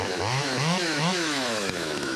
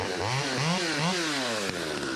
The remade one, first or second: first